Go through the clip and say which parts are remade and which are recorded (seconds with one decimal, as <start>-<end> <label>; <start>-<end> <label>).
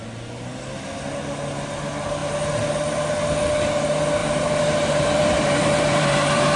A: 0.0-4.2 recorded; 4.2-6.6 remade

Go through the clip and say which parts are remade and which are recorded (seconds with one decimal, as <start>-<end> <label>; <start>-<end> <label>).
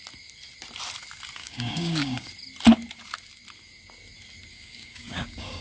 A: 0.0-1.4 recorded; 1.4-2.3 remade; 2.3-4.5 recorded; 4.5-5.6 remade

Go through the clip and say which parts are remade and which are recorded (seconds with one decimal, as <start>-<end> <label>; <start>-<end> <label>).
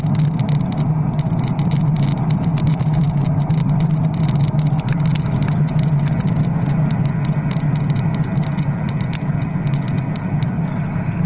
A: 0.0-11.3 recorded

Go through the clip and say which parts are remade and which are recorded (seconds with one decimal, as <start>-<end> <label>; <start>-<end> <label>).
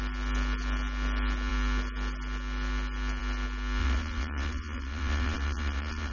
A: 0.0-3.8 recorded; 3.8-6.1 remade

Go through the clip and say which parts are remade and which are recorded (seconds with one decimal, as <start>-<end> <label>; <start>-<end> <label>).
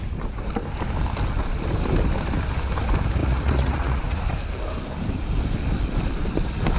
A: 0.0-3.2 recorded; 3.2-4.2 remade; 4.2-6.8 recorded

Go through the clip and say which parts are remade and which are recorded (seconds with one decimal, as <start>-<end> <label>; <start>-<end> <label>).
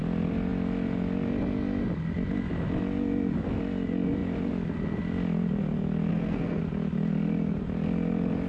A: 0.0-6.1 recorded; 6.1-6.6 remade; 6.6-8.5 recorded